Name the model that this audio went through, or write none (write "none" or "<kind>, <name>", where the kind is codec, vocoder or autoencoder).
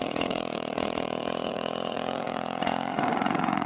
vocoder, Vocos